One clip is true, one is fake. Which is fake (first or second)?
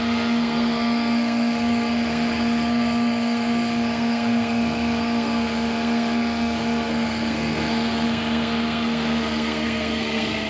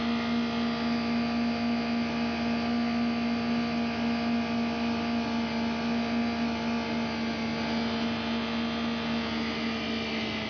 first